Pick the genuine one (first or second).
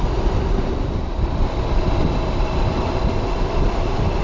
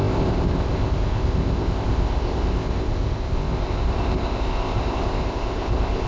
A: first